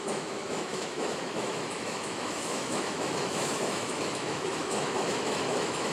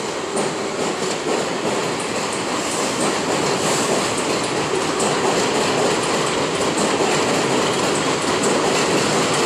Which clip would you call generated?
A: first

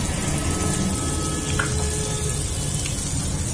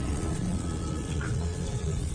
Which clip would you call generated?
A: second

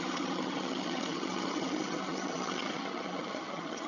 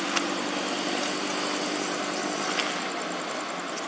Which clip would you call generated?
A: first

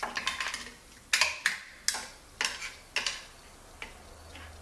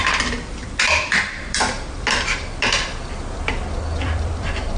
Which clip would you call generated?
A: second